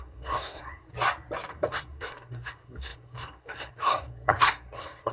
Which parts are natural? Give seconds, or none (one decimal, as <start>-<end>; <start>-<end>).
0.9-1.5